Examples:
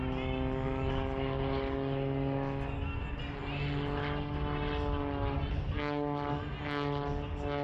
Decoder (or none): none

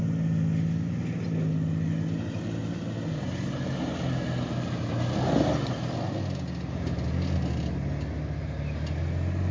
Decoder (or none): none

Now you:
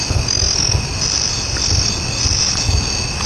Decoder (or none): none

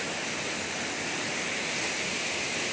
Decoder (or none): none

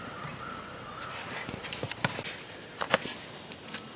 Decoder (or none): none